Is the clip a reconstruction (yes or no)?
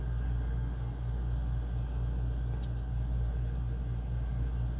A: no